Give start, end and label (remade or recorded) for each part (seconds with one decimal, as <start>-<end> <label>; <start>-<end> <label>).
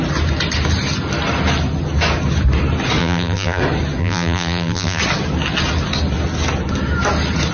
0.0-3.0 recorded; 3.0-3.6 remade; 3.6-4.0 recorded; 4.0-5.0 remade; 5.0-7.5 recorded